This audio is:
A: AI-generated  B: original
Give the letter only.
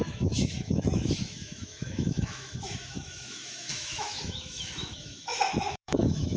A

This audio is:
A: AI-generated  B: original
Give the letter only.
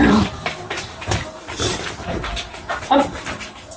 B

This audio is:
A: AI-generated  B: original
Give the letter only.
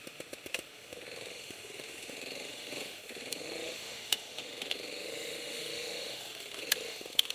A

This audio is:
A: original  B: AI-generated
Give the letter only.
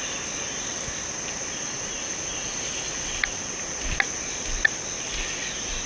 A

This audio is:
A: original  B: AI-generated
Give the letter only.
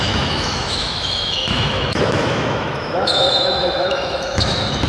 B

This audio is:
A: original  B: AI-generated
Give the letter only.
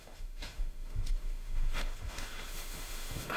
B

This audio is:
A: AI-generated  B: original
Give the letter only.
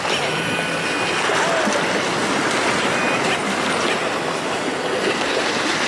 B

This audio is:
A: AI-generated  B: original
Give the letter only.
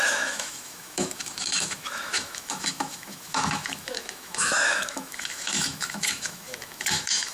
A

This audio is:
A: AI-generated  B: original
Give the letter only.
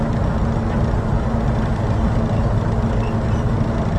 B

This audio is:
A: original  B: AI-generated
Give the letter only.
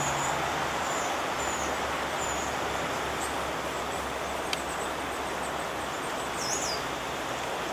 A